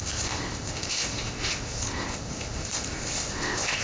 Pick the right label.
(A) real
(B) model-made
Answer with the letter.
B